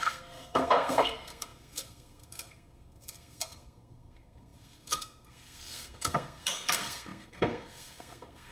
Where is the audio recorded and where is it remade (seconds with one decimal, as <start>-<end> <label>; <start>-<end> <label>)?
0.0-8.5 remade